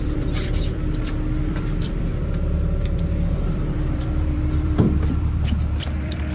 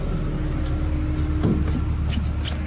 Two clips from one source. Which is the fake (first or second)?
first